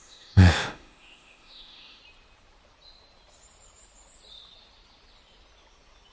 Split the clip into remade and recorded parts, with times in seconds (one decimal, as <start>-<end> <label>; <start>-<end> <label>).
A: 0.0-2.0 remade; 2.0-6.1 recorded

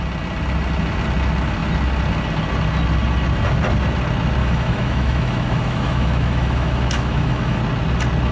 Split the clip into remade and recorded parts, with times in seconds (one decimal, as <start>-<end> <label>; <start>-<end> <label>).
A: 0.0-4.4 recorded; 4.4-7.6 remade; 7.6-8.3 recorded

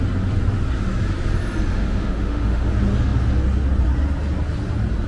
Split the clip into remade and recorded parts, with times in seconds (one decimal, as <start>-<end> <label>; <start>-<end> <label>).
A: 0.0-1.7 recorded; 1.7-2.7 remade; 2.7-5.1 recorded

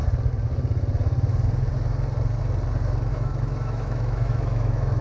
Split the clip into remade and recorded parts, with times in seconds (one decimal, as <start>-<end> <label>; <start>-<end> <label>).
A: 0.0-3.1 recorded; 3.1-5.0 remade

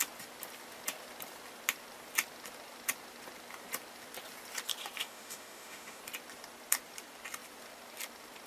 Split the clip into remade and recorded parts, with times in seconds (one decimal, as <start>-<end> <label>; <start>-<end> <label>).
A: 0.0-5.0 recorded; 5.0-6.0 remade; 6.0-8.5 recorded